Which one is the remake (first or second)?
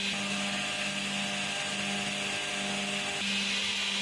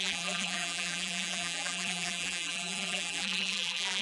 second